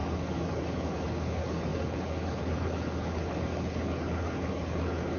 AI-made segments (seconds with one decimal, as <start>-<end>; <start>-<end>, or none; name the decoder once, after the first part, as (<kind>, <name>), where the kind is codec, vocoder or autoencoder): 0.0-5.2 (codec, HILCodec)